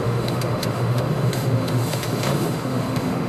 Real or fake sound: fake